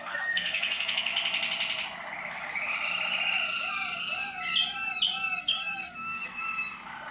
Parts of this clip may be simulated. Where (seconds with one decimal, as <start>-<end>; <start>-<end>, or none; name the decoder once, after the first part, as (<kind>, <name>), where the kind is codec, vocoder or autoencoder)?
0.0-1.1 (codec, SNAC); 5.4-6.4